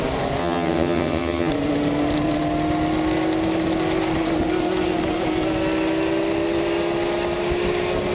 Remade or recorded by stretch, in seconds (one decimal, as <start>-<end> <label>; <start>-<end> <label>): 0.0-0.4 recorded; 0.4-1.5 remade; 1.5-8.1 recorded